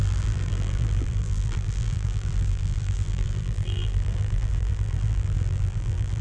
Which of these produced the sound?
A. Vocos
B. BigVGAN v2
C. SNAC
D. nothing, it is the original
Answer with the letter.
B